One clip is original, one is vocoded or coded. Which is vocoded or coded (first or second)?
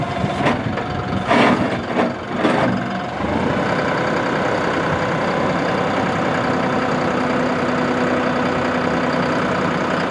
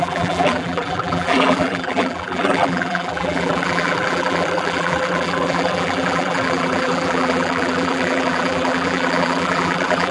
second